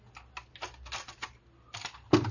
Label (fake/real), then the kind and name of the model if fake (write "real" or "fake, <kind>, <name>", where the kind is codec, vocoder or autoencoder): real